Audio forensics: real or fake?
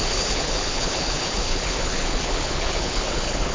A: fake